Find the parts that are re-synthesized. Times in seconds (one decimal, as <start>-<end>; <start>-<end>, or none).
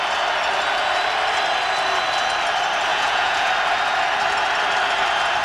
2.9-3.5